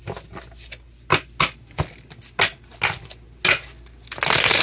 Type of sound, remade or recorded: recorded